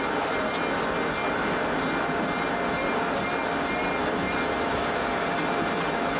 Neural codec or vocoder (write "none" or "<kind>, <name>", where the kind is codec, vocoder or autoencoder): none